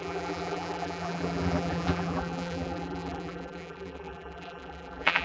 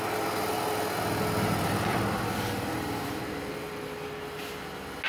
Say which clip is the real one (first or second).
second